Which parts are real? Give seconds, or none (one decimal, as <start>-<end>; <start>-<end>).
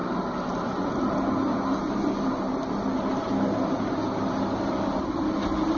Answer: 0.0-0.6; 1.5-5.0